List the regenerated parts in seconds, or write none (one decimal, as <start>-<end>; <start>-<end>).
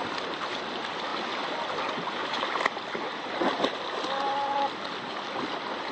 0.0-5.9